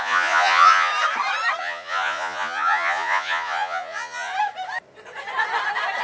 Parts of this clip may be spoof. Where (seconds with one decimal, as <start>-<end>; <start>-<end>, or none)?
0.0-0.9; 1.6-4.3